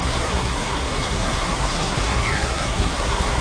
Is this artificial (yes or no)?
yes